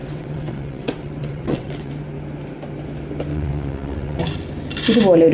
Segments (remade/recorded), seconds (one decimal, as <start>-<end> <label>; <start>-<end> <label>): 0.0-1.9 remade; 1.9-3.3 recorded; 3.3-4.2 remade; 4.2-5.3 recorded